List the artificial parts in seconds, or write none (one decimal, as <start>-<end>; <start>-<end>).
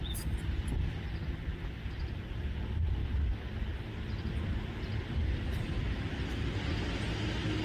none